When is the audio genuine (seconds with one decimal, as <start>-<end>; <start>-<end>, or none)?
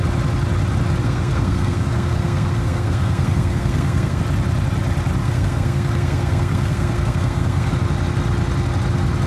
0.0-1.0; 4.2-5.2; 7.7-9.3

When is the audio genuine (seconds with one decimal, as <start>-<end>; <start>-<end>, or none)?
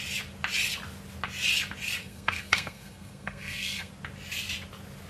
0.0-2.0; 3.9-5.1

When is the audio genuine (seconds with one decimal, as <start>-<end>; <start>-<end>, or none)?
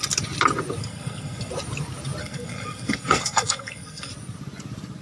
0.0-0.8; 1.5-2.2; 4.1-5.0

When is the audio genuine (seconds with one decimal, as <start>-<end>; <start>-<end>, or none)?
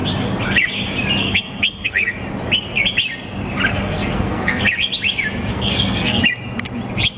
0.0-1.2; 2.1-3.7; 4.6-5.5; 6.2-7.2